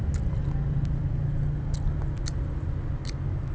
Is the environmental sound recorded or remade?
recorded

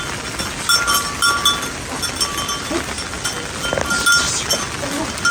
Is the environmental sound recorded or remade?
recorded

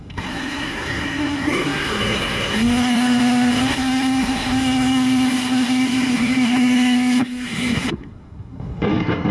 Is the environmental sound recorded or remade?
remade